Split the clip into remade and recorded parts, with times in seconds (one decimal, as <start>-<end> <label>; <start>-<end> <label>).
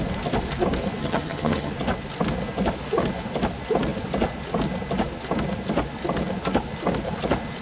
0.0-1.0 recorded; 1.0-1.7 remade; 1.7-7.6 recorded